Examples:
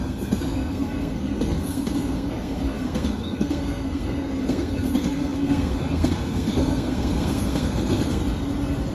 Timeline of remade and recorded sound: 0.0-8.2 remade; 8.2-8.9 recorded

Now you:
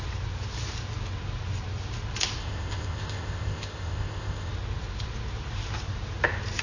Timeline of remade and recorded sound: 0.0-2.4 recorded; 2.4-4.5 remade; 4.5-6.6 recorded

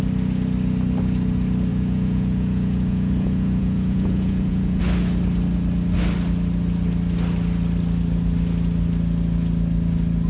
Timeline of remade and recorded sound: 0.0-1.7 recorded; 1.7-4.8 remade; 4.8-10.3 recorded

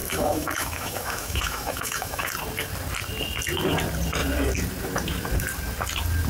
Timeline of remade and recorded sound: 0.0-2.3 remade; 2.3-6.3 recorded

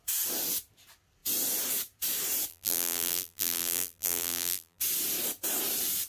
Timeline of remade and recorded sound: 0.0-2.5 recorded; 2.5-4.8 remade; 4.8-6.1 recorded